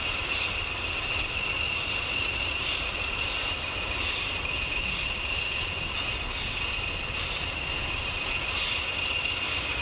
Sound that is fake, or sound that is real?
real